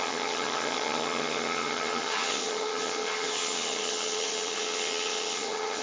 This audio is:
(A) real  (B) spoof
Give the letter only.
B